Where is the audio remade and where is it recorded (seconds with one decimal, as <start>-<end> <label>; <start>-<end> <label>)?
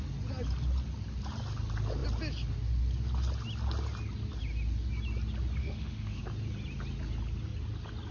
0.0-5.6 recorded; 5.6-6.2 remade; 6.2-8.1 recorded